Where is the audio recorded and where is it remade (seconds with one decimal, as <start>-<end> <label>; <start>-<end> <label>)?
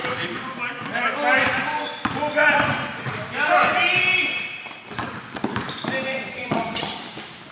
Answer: 0.0-6.3 recorded; 6.3-7.0 remade; 7.0-7.5 recorded